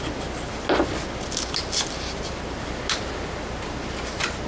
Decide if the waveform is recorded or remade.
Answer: recorded